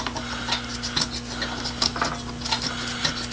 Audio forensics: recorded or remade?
recorded